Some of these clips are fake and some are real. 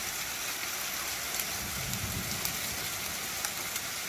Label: real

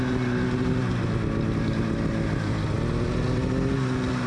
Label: real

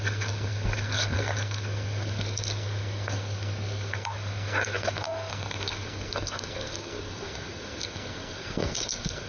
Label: fake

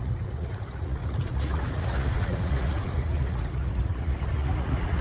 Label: fake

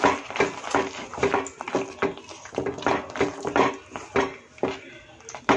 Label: real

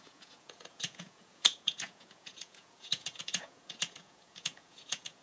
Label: fake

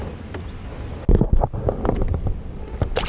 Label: real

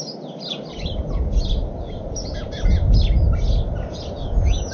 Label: real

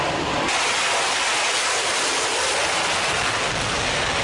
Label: real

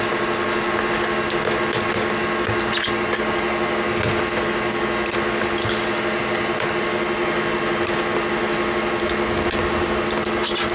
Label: real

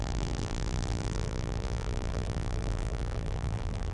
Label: fake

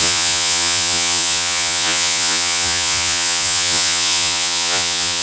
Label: fake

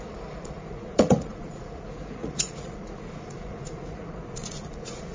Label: fake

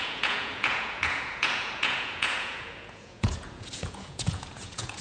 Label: fake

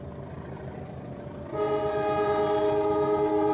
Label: real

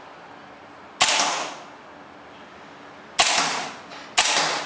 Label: real